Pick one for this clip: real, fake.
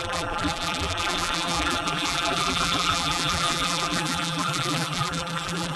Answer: fake